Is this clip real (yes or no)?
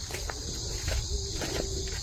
yes